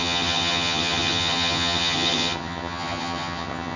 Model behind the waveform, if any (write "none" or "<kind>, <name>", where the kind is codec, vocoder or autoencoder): vocoder, HiFi-GAN